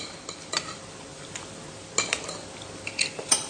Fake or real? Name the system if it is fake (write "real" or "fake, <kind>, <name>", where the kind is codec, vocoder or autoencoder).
real